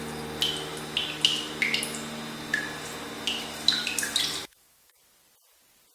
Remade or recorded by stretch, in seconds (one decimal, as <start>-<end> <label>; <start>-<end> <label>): 0.0-4.4 recorded; 4.4-5.0 remade; 5.0-5.9 recorded